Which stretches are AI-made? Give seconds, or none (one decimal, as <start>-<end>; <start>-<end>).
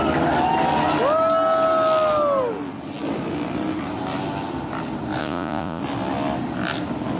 5.2-5.8